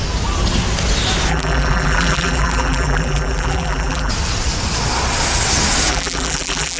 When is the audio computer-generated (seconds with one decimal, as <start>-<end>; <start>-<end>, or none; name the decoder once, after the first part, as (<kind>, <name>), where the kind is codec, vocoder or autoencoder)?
1.3-4.1 (vocoder, BigVGAN v2); 5.9-6.8